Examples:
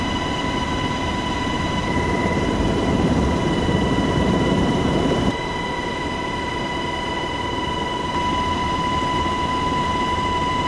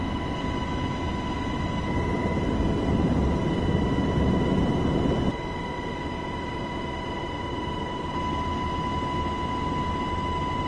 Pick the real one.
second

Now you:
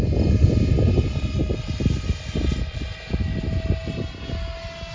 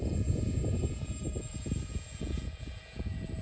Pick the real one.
first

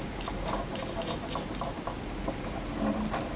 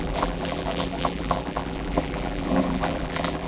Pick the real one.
first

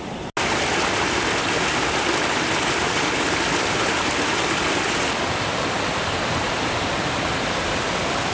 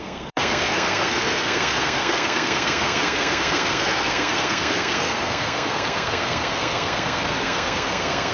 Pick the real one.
first